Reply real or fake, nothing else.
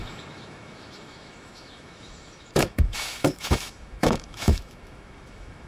fake